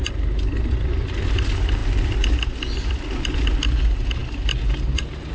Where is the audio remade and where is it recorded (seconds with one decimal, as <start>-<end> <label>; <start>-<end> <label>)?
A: 0.0-5.3 recorded